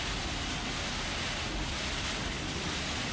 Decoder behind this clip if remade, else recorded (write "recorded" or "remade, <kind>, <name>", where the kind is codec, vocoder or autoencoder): recorded